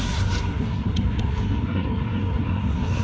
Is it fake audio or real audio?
fake